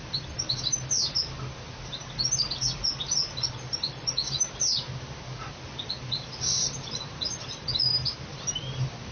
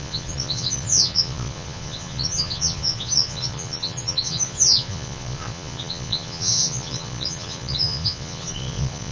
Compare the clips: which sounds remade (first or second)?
second